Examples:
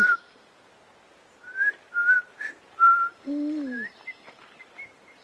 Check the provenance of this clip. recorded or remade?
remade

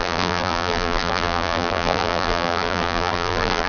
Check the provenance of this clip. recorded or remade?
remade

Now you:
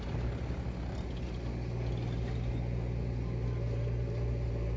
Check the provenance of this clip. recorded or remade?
recorded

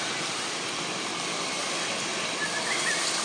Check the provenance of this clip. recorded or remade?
remade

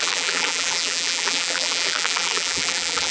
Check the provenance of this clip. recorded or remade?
remade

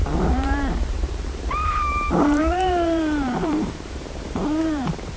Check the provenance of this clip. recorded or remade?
remade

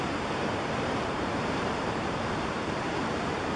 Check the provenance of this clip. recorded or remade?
remade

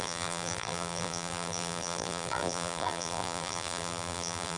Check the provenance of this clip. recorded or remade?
remade